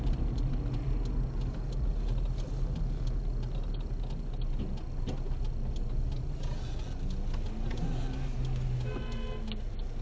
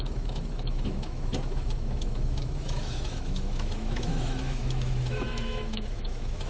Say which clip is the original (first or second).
first